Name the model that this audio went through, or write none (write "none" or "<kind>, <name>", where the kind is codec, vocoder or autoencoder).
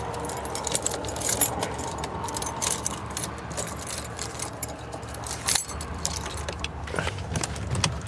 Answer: vocoder, BigVGAN v2